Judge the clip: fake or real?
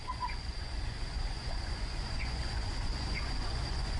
fake